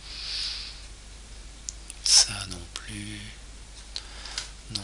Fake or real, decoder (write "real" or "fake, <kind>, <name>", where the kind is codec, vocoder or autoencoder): real